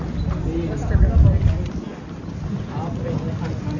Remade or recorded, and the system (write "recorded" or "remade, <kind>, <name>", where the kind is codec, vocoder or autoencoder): recorded